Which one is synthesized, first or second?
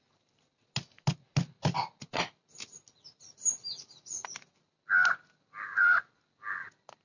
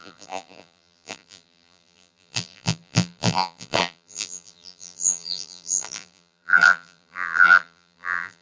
second